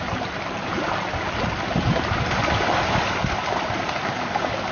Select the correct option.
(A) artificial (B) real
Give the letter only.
B